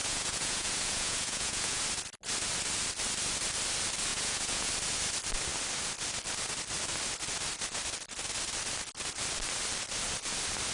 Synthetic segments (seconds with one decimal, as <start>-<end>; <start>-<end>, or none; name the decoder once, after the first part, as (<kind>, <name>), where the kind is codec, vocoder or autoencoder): 0.0-1.8 (vocoder, Vocos); 4.1-4.7

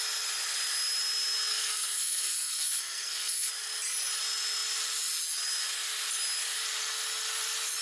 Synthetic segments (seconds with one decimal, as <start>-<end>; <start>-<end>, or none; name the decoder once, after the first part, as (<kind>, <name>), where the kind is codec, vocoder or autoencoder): 1.5-3.5 (codec, SNAC)

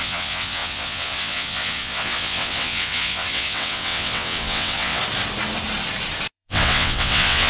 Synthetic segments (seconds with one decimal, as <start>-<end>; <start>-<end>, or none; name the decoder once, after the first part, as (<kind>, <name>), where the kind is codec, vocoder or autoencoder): 0.0-5.0 (vocoder, WaveNeXt); 6.3-7.5

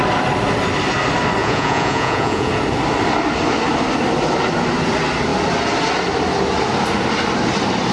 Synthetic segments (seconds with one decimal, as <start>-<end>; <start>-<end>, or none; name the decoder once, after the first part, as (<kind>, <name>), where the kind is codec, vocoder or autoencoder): 1.4-2.5 (vocoder, Vocos)

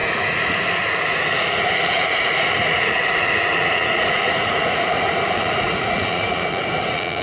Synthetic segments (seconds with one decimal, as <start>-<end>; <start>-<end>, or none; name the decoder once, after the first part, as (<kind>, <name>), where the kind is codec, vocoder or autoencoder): 0.0-7.2 (vocoder, Vocos)

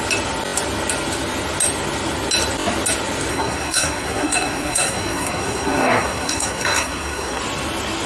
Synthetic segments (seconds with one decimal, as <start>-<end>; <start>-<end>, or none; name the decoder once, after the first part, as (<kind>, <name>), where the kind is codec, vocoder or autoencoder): 3.3-7.4 (codec, SNAC)

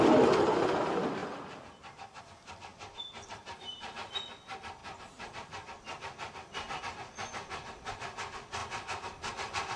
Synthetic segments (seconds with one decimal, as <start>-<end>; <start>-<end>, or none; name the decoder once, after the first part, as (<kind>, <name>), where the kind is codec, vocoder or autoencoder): 2.7-4.1 (vocoder, BigVGAN v2); 4.8-6.8